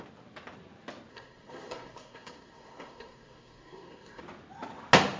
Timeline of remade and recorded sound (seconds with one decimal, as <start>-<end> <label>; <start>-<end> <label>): 0.0-1.1 recorded; 1.1-4.2 remade; 4.2-5.2 recorded